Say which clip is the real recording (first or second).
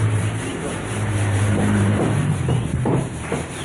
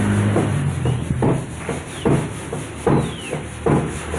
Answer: second